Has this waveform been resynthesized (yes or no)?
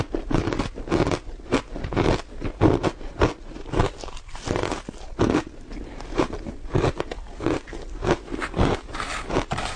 no